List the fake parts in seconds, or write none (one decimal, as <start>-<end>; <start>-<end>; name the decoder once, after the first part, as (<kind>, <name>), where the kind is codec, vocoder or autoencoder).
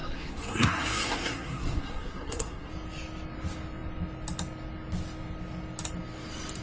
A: 0.0-2.7 (codec, SNAC)